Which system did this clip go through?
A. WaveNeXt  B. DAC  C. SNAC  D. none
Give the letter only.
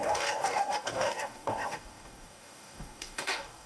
B